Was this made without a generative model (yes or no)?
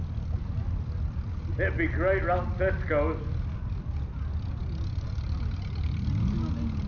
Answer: yes